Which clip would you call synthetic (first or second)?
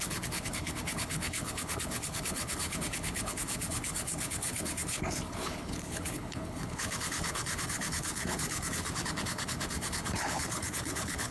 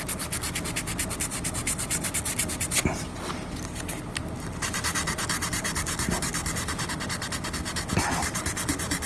first